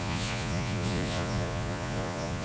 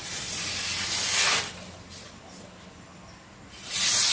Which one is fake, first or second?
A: first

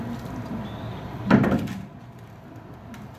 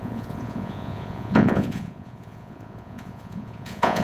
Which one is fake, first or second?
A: second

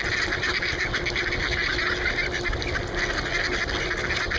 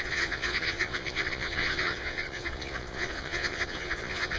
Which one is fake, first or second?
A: second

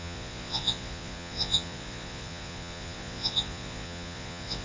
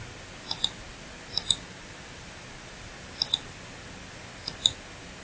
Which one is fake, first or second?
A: first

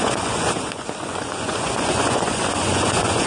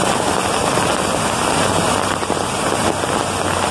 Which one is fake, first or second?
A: first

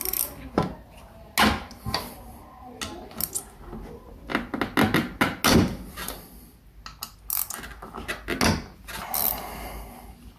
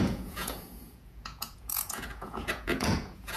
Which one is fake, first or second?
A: second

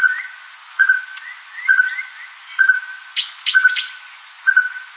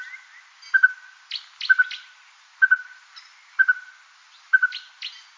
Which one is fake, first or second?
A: first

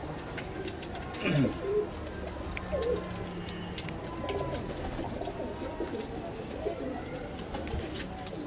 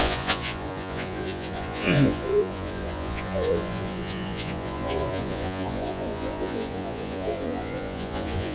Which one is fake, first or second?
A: second